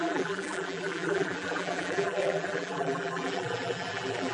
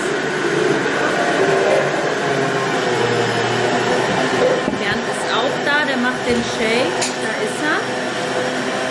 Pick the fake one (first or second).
first